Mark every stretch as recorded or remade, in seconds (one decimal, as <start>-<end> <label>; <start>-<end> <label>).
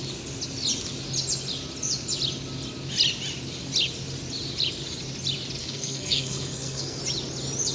0.0-5.6 recorded; 5.6-7.0 remade; 7.0-7.7 recorded